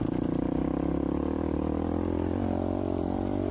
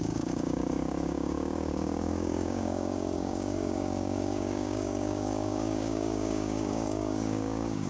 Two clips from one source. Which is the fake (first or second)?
second